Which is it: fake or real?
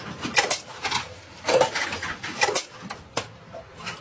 real